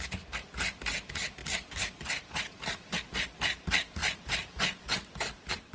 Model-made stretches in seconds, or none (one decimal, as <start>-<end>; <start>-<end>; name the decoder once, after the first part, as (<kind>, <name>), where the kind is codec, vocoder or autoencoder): 1.4-3.1 (vocoder, BigVGAN v2); 4.0-5.7